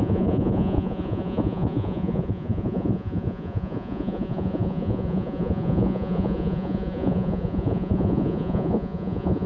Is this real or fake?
fake